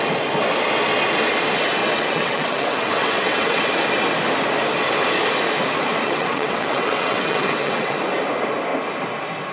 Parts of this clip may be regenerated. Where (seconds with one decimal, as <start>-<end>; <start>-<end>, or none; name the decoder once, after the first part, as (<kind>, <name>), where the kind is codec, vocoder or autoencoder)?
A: 1.8-3.6 (vocoder, WaveNeXt); 6.0-8.0